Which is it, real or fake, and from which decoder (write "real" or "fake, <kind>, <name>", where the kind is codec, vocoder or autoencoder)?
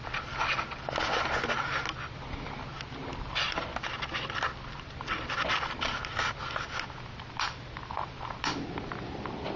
real